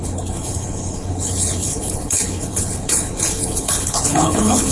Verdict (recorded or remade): remade